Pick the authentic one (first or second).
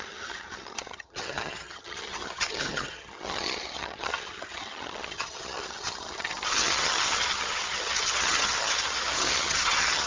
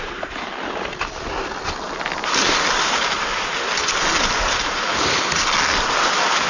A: second